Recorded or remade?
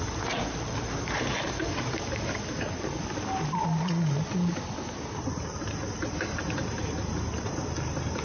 recorded